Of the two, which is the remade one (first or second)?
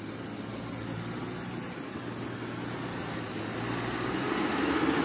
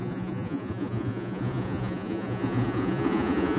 second